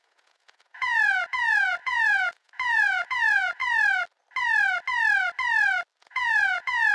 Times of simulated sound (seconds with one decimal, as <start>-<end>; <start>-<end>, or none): 0.0-3.6; 6.0-6.9